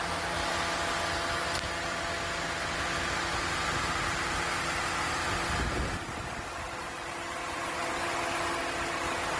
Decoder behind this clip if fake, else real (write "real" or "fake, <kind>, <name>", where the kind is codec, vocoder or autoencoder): real